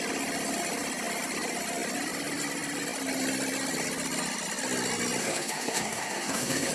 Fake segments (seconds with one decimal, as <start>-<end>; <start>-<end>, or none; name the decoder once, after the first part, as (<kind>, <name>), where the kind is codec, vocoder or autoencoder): 5.2-6.7 (codec, SNAC)